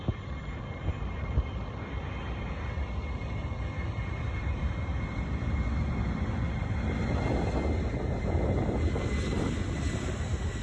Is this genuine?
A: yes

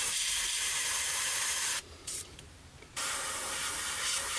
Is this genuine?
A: no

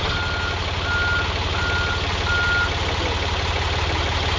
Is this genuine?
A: yes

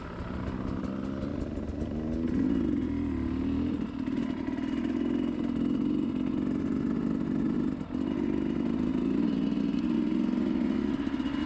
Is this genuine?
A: yes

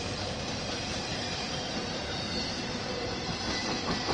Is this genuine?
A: no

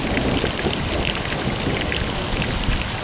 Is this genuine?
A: yes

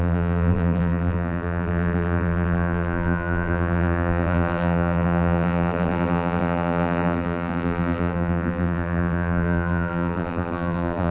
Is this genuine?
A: no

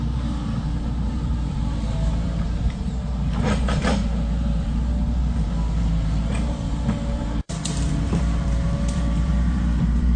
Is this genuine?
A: no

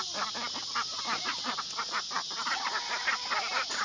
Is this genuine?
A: yes